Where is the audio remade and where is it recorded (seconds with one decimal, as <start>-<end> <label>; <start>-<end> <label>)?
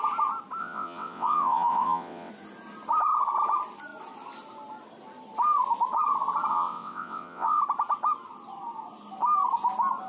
0.0-0.6 recorded; 0.6-2.3 remade; 2.3-6.5 recorded; 6.5-7.6 remade; 7.6-10.1 recorded